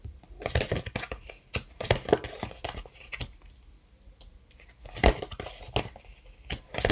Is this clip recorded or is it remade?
recorded